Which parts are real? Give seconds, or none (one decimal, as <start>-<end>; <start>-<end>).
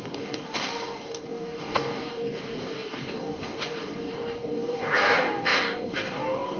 none